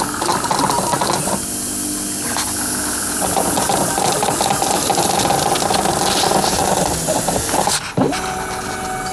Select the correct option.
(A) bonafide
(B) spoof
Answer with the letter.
A